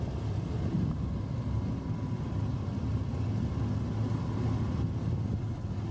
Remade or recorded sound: recorded